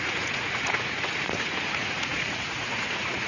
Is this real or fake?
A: fake